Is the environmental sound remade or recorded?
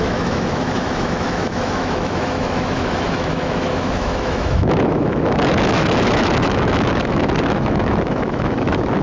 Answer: remade